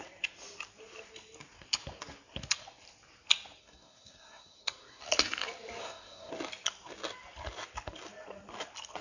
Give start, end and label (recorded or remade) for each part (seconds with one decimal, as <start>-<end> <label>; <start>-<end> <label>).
0.0-3.6 recorded; 3.6-5.0 remade; 5.0-5.8 recorded; 5.8-6.3 remade; 6.3-9.0 recorded